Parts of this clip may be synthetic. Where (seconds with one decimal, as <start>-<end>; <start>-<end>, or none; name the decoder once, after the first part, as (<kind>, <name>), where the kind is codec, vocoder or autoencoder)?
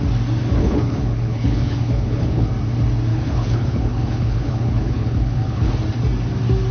0.6-2.5 (codec, HILCodec); 3.1-5.7